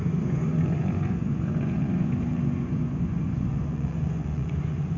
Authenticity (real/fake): fake